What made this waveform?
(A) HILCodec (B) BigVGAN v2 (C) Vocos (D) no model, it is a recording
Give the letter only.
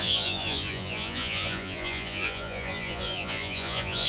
C